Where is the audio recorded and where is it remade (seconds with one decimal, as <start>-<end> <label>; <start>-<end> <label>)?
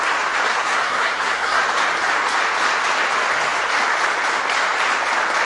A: 0.0-0.5 recorded; 0.5-1.6 remade; 1.6-5.5 recorded